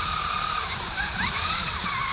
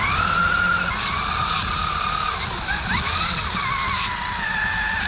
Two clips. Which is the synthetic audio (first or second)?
first